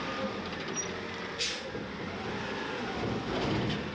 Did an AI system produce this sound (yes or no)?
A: no